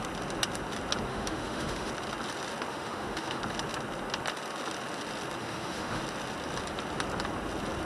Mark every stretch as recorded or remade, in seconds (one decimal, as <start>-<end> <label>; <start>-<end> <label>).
0.0-1.1 recorded; 1.1-1.9 remade; 1.9-2.7 recorded; 2.7-3.4 remade; 3.4-5.4 recorded; 5.4-6.0 remade; 6.0-7.9 recorded